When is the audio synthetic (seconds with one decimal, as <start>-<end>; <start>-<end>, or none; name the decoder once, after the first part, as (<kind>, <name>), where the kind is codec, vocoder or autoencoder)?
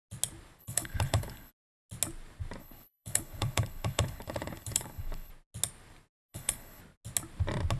0.6-1.5 (codec, HILCodec); 2.6-5.3; 6.3-6.8